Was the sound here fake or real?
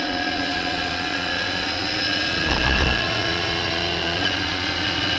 fake